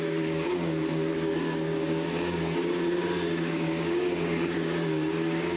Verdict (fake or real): fake